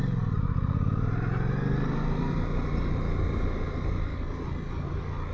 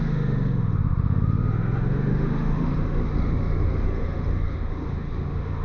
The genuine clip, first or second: first